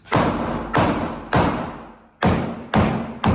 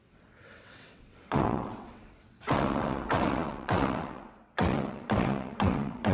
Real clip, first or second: first